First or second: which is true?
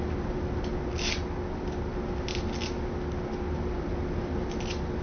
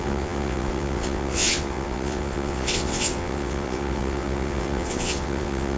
first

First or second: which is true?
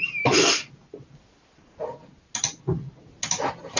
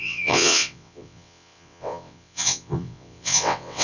first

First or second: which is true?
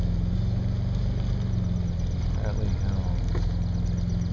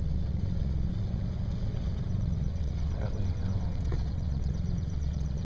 first